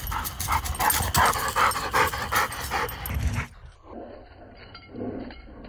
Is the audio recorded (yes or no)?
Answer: yes